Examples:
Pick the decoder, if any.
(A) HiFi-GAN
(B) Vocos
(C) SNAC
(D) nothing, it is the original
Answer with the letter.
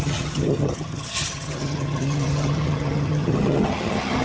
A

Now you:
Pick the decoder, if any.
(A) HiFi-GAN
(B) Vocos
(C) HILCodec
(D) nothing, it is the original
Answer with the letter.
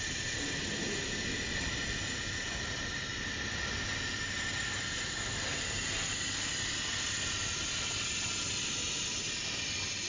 D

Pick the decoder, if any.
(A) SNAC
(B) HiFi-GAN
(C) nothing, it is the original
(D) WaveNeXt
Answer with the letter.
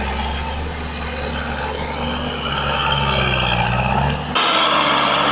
C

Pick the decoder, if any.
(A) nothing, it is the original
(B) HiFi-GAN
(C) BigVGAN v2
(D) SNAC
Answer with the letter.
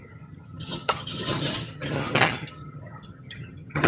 B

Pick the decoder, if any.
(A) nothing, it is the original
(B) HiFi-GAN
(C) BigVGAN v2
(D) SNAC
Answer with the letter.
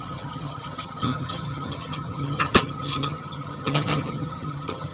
B